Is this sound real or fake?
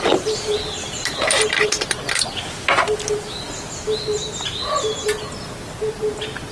real